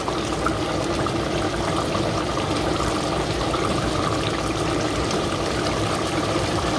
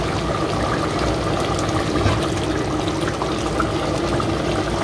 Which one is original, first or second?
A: second